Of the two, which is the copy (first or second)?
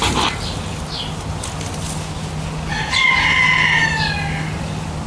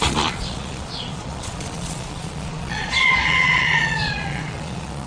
second